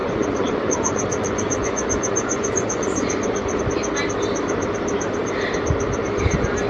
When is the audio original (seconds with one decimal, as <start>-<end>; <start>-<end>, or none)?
3.6-6.7